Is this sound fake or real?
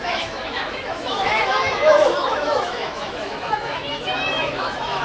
fake